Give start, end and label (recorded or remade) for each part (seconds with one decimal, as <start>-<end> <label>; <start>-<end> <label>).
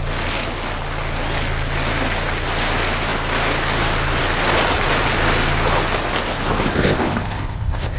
0.0-6.7 recorded; 6.7-8.0 remade